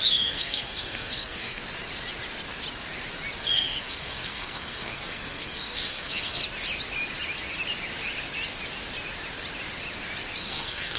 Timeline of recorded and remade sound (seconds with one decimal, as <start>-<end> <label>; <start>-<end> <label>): 0.0-1.6 remade; 1.6-3.4 recorded; 3.4-6.4 remade; 6.4-10.4 recorded; 10.4-11.0 remade